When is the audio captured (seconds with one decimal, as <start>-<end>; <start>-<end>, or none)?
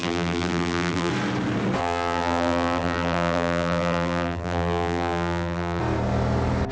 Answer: 1.1-1.8; 5.8-6.7